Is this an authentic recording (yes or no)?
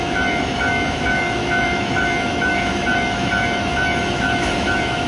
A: no